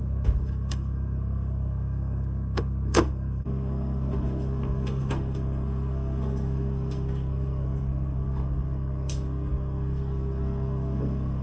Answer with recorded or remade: remade